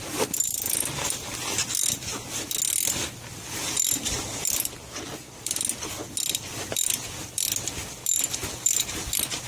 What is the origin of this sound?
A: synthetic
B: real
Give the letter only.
B